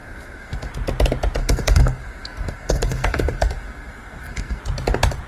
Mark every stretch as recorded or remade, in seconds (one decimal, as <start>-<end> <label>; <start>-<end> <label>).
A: 0.0-0.7 remade; 0.7-1.4 recorded; 1.4-4.6 remade; 4.6-5.3 recorded